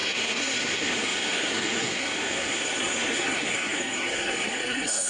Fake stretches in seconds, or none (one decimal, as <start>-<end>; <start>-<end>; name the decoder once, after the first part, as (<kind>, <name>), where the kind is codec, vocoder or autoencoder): 0.0-5.1 (codec, SNAC)